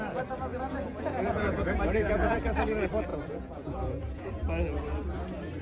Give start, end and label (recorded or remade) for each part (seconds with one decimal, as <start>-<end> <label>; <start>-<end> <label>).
0.0-0.5 recorded; 0.5-2.4 remade; 2.4-3.1 recorded; 3.1-4.3 remade; 4.3-5.6 recorded